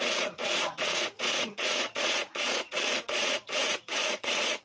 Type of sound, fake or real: fake